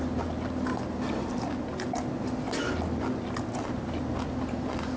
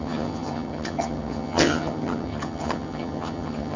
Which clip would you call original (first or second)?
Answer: first